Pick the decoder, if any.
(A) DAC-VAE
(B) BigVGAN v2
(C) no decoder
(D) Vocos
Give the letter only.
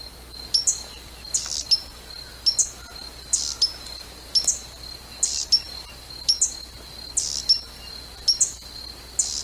C